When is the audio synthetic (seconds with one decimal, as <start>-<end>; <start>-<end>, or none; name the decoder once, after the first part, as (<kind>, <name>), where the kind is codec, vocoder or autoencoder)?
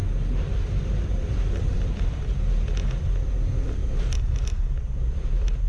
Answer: 0.6-3.8 (vocoder, BigVGAN v2); 4.6-5.7